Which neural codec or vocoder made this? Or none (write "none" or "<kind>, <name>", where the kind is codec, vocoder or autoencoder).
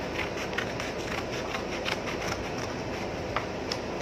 none